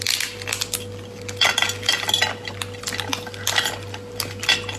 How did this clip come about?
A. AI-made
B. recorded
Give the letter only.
B